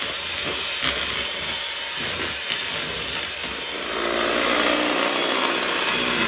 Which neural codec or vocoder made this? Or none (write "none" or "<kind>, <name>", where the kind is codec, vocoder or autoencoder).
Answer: none